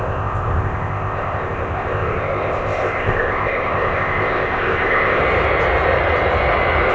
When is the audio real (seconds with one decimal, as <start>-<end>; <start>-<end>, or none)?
5.2-6.9